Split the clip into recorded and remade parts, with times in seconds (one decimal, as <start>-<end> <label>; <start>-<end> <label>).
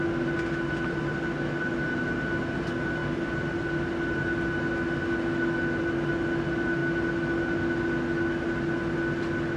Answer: 0.0-9.6 recorded